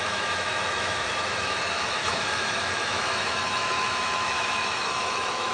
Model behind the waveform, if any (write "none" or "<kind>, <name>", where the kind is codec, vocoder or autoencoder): autoencoder, DAC-VAE